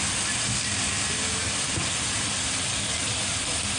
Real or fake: real